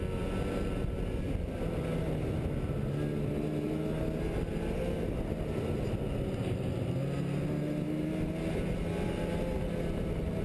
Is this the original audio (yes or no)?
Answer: yes